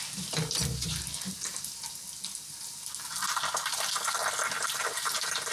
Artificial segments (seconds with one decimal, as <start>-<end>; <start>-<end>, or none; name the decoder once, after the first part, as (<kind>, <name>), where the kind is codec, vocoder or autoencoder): none